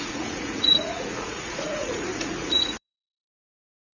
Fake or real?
fake